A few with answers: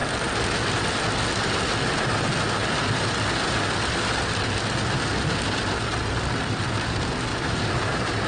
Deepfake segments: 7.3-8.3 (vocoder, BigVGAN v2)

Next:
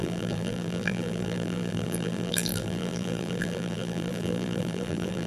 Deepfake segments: 0.0-5.3 (vocoder, BigVGAN v2)

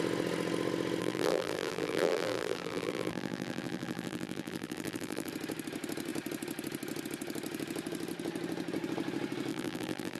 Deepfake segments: 1.0-5.3 (vocoder, BigVGAN v2); 9.5-10.2

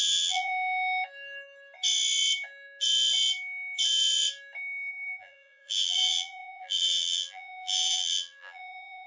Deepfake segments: 0.0-0.5 (vocoder, BigVGAN v2); 4.9-9.1

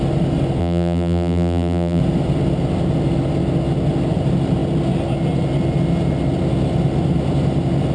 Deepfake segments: 0.6-2.0 (vocoder, BigVGAN v2)

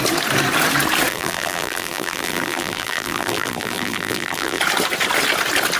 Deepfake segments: 1.1-4.6 (vocoder, BigVGAN v2)

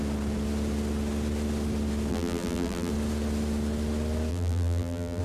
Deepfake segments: 2.1-2.9 (vocoder, BigVGAN v2); 4.3-5.2